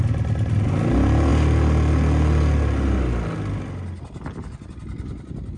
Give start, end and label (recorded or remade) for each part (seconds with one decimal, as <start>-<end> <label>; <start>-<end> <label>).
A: 0.0-5.6 recorded